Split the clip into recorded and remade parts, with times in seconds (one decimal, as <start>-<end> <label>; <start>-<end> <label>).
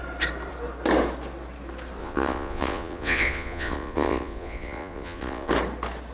0.0-2.0 recorded; 2.0-5.5 remade; 5.5-6.1 recorded